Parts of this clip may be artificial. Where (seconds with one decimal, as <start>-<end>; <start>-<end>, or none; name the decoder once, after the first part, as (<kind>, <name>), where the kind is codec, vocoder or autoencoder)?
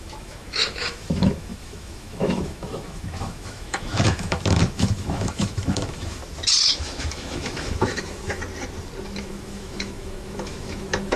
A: 0.0-6.2 (autoencoder, DAC-VAE); 6.7-8.4; 9.2-11.2